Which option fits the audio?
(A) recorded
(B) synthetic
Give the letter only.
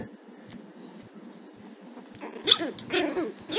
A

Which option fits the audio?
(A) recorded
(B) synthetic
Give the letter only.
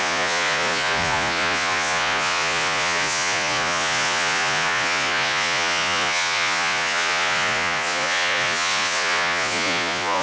B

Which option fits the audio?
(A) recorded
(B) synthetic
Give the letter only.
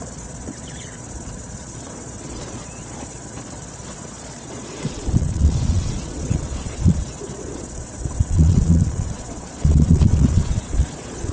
B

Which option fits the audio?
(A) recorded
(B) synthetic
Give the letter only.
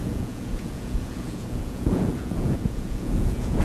B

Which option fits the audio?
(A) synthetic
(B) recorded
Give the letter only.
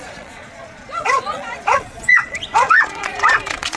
A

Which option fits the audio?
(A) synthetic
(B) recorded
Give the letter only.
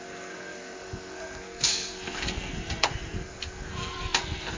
A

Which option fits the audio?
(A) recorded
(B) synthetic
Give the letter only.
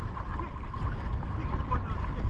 A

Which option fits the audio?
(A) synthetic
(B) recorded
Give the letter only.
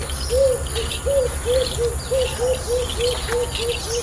B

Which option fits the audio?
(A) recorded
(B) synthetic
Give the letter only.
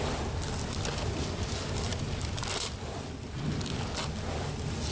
A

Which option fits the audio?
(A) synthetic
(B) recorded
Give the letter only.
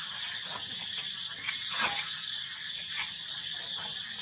B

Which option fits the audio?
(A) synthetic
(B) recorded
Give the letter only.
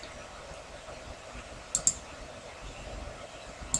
B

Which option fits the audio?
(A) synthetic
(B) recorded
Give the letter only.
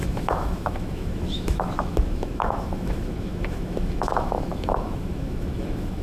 A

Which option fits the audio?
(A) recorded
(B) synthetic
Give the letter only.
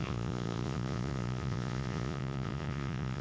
B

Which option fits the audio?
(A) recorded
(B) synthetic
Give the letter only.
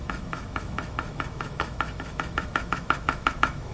B